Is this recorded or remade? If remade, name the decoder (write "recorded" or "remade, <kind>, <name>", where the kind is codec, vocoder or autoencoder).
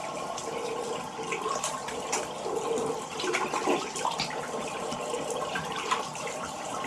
remade, vocoder, BigVGAN v2